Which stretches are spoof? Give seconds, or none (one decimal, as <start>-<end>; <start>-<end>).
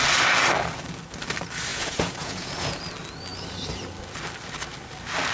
1.7-2.8